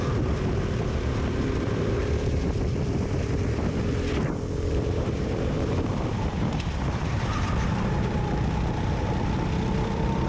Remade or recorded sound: remade